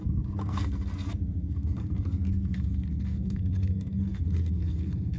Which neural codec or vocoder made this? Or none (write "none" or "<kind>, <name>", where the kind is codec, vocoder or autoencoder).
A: codec, SNAC